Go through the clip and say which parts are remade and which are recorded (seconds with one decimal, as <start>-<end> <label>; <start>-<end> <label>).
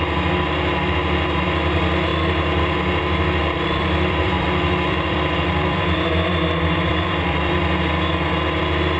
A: 0.0-3.4 recorded; 3.4-7.9 remade; 7.9-9.0 recorded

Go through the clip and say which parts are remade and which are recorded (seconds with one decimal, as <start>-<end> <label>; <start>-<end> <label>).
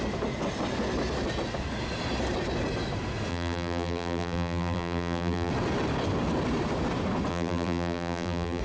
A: 0.0-3.3 recorded; 3.3-5.5 remade; 5.5-7.3 recorded; 7.3-8.6 remade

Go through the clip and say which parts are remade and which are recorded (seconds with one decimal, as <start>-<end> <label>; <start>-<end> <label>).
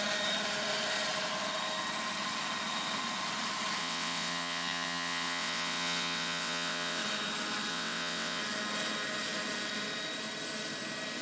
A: 0.0-3.8 recorded; 3.8-7.0 remade; 7.0-7.7 recorded; 7.7-8.4 remade; 8.4-11.2 recorded